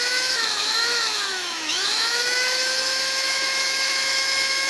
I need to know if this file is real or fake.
fake